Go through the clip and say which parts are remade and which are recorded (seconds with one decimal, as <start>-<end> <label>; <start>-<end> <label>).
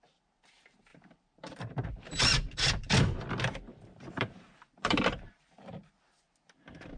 0.0-0.9 recorded; 0.9-3.2 remade; 3.2-3.7 recorded; 3.7-6.0 remade; 6.0-7.0 recorded